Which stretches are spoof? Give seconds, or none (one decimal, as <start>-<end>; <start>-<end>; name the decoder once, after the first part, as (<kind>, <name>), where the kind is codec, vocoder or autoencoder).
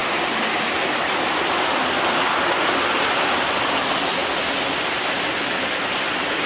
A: none